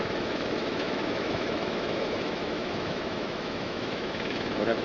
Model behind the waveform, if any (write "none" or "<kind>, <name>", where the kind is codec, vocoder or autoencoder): autoencoder, DAC-VAE